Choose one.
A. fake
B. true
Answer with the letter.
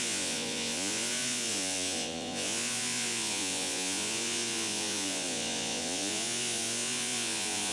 A